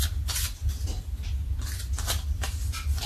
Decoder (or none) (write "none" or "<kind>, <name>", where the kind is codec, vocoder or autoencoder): none